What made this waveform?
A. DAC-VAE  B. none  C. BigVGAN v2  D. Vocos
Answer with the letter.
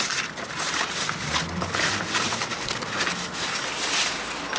B